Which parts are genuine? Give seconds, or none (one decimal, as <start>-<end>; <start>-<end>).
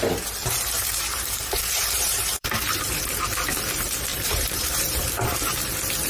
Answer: 0.0-0.4; 3.0-4.1; 5.1-6.1